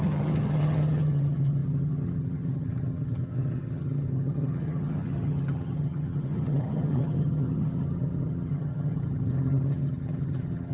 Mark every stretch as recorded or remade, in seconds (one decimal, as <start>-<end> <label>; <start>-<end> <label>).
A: 0.0-10.7 remade